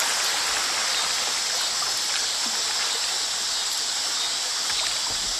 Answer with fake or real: real